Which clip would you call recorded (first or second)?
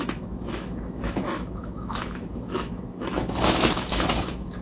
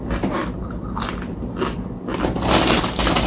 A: second